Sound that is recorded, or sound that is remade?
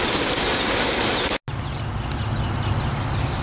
recorded